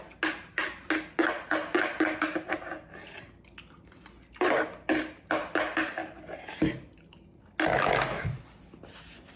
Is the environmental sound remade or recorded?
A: recorded